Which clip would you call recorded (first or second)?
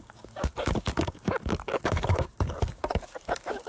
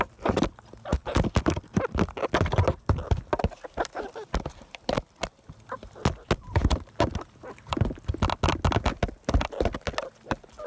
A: second